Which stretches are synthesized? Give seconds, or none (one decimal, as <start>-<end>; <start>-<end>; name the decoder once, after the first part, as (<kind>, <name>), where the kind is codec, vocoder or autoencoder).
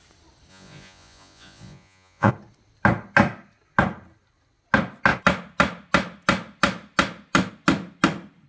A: 0.5-2.3 (vocoder, Vocos)